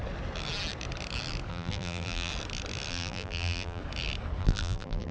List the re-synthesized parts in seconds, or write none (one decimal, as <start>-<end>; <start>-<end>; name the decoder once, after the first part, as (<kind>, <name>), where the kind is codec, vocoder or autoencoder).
1.5-2.3 (vocoder, BigVGAN v2); 2.9-3.8; 4.4-5.1